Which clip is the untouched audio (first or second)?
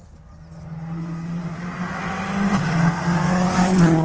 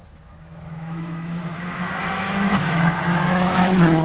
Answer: first